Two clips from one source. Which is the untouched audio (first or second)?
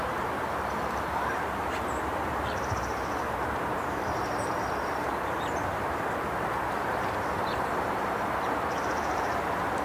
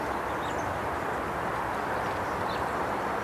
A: second